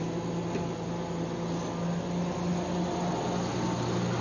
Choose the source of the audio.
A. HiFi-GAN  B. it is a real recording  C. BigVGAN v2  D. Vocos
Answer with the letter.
B